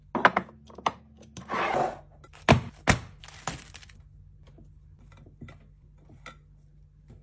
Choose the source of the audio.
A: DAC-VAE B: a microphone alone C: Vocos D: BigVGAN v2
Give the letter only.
B